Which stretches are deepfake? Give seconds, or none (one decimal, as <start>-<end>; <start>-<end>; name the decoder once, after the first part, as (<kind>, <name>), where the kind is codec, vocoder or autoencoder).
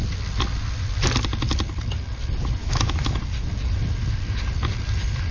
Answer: 2.6-3.2 (autoencoder, DAC-VAE)